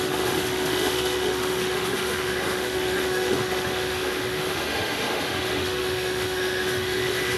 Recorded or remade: remade